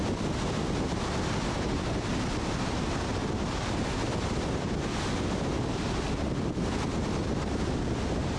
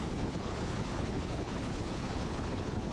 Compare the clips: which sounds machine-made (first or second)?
second